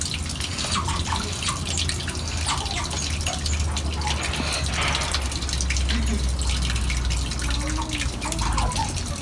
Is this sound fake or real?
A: real